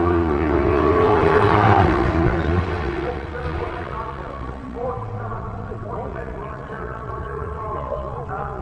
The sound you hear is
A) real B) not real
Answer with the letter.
B